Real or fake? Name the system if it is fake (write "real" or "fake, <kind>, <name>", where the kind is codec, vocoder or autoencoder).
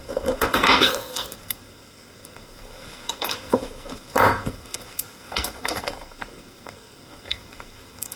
fake, codec, SNAC